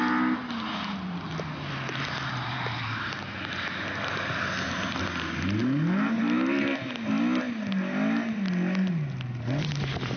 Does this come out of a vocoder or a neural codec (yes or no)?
no